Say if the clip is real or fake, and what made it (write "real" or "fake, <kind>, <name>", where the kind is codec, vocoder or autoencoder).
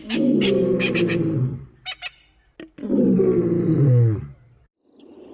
real